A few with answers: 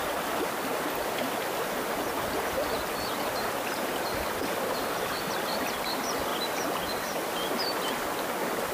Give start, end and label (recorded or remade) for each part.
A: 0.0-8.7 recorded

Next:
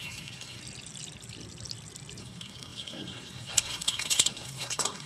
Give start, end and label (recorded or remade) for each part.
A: 0.0-0.6 remade; 0.6-2.2 recorded; 2.2-5.1 remade

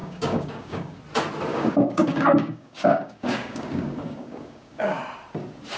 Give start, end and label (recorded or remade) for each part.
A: 0.0-1.0 remade; 1.0-1.5 recorded; 1.5-5.0 remade; 5.0-5.8 recorded

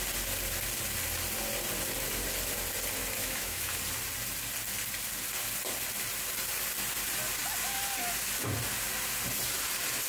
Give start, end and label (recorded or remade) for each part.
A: 0.0-3.2 recorded; 3.2-3.8 remade; 3.8-10.1 recorded

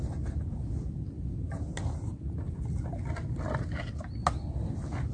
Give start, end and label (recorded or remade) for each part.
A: 0.0-5.1 recorded

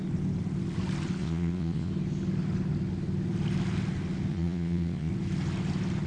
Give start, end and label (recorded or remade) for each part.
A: 0.0-1.2 recorded; 1.2-1.9 remade; 1.9-4.3 recorded; 4.3-5.1 remade; 5.1-6.1 recorded